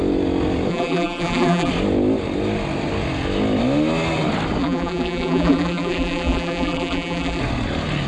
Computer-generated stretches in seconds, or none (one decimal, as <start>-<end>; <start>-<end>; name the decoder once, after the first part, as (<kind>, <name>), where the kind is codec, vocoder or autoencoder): 0.7-1.7 (vocoder, BigVGAN v2); 4.6-7.4